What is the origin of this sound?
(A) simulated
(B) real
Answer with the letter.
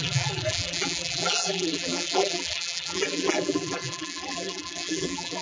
A